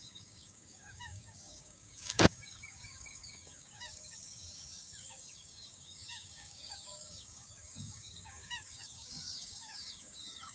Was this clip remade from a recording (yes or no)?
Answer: yes